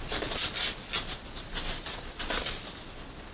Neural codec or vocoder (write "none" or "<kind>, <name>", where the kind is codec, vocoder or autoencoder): none